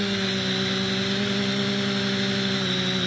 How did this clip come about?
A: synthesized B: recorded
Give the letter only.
B